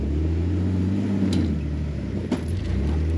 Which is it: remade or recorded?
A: recorded